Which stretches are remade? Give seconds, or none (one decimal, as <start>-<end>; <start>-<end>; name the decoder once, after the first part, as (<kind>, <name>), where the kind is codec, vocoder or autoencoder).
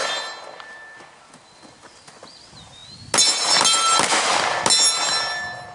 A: none